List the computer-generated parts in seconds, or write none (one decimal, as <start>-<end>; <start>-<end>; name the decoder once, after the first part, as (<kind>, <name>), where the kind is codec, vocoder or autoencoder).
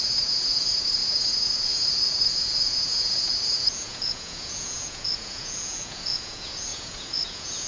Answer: 0.0-7.7 (vocoder, Vocos)